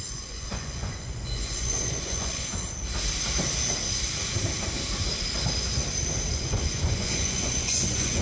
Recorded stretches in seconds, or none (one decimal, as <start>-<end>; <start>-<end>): 2.5-6.3